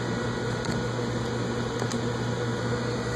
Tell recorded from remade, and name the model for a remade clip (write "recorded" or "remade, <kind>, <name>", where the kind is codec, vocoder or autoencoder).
recorded